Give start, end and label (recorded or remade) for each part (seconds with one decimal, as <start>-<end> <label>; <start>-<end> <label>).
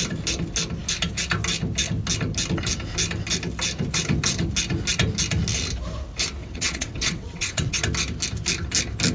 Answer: 0.0-6.4 recorded; 6.4-7.8 remade; 7.8-9.1 recorded